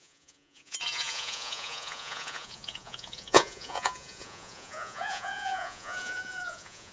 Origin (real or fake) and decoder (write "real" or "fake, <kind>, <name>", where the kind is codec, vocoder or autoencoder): fake, vocoder, Vocos